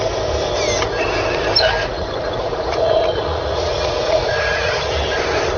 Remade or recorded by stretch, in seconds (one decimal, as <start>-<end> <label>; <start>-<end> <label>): 0.0-1.8 recorded; 1.8-4.7 remade; 4.7-5.6 recorded